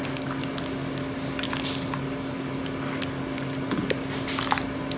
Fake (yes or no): no